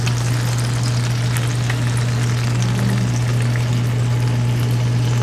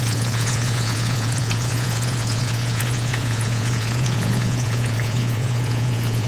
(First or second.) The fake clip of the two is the second